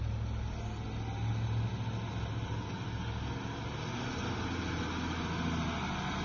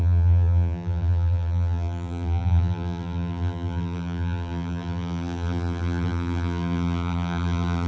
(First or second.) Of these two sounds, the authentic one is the first